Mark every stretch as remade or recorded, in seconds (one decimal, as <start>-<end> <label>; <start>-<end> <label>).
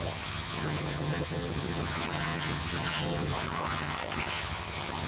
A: 0.0-5.1 remade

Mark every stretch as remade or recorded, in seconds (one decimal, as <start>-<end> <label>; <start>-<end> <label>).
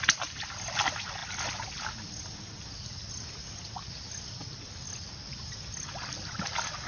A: 0.0-6.9 recorded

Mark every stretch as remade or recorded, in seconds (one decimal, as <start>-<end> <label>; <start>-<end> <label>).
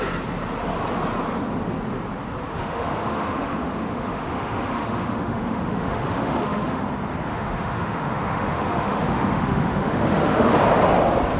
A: 0.0-2.5 recorded; 2.5-6.8 remade; 6.8-7.3 recorded; 7.3-10.6 remade; 10.6-11.4 recorded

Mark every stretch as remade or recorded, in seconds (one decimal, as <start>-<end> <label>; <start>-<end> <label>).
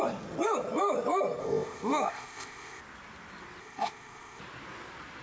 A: 0.0-1.4 recorded; 1.4-2.8 remade; 2.8-3.6 recorded; 3.6-4.4 remade; 4.4-5.2 recorded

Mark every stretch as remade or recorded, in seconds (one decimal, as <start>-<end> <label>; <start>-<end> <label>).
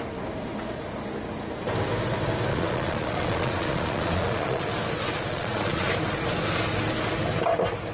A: 0.0-2.5 recorded; 2.5-4.7 remade; 4.7-5.3 recorded; 5.3-5.9 remade; 5.9-7.9 recorded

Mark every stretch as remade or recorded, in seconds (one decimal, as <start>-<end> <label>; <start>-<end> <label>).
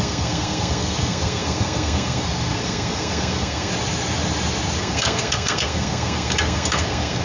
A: 0.0-3.7 remade; 3.7-4.8 recorded; 4.8-7.2 remade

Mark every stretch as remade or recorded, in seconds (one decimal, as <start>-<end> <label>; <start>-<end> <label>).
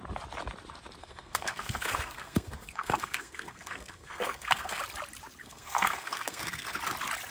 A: 0.0-1.0 recorded; 1.0-4.8 remade; 4.8-5.4 recorded; 5.4-6.8 remade; 6.8-7.3 recorded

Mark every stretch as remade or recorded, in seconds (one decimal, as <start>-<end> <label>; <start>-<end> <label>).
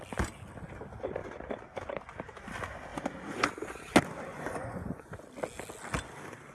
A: 0.0-4.3 recorded; 4.3-5.1 remade; 5.1-6.5 recorded